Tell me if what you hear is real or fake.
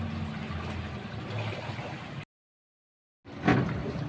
real